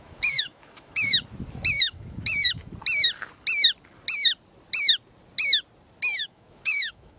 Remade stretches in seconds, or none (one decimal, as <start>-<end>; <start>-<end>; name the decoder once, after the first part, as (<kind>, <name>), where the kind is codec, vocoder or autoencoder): 0.0-1.1 (autoencoder, DAC-VAE); 1.8-2.7; 6.2-7.2